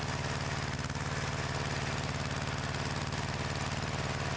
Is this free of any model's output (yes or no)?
yes